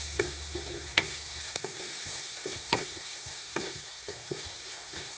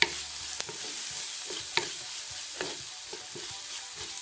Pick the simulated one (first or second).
first